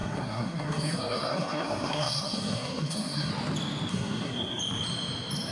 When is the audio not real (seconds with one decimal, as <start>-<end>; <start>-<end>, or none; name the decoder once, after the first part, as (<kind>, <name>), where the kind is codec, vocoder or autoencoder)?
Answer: 0.0-3.3 (codec, SNAC); 3.9-4.6